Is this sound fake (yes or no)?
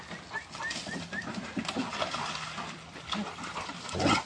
no